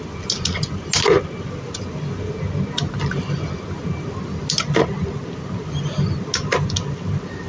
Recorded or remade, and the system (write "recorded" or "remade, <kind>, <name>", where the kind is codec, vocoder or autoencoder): recorded